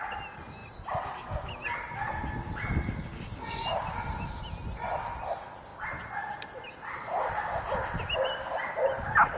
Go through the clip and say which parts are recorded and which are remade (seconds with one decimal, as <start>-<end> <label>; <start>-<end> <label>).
0.0-9.4 recorded